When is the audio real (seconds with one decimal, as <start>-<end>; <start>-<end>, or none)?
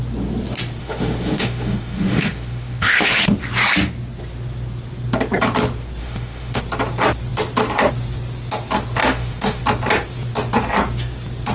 0.0-0.8; 3.2-6.0; 6.6-9.0; 9.6-11.5